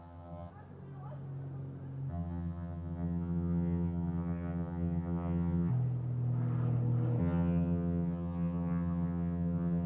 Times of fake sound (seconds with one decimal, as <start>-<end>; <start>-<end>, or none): 0.0-0.5; 2.1-5.7; 7.2-9.9